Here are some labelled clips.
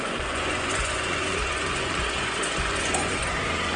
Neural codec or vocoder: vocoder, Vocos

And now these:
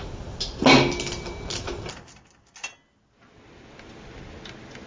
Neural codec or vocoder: none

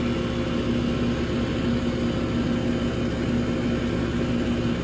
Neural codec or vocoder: none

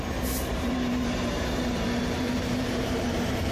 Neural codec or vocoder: vocoder, BigVGAN v2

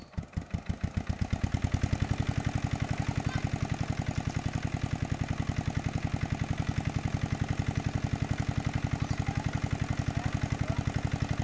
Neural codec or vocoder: none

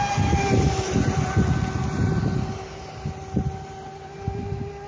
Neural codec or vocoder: none